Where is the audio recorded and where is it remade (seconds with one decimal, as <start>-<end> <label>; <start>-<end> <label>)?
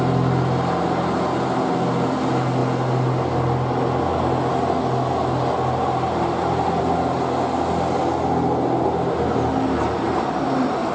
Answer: 0.0-10.9 recorded